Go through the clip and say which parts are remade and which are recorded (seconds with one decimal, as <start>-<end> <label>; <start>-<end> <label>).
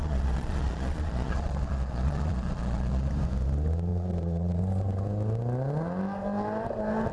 0.0-3.1 remade; 3.1-3.9 recorded; 3.9-4.6 remade; 4.6-7.1 recorded